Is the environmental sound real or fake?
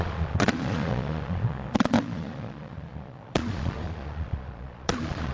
fake